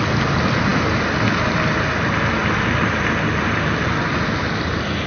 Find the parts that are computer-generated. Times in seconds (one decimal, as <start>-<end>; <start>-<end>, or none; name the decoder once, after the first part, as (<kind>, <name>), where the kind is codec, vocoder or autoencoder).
none